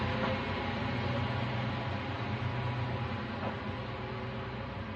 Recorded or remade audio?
recorded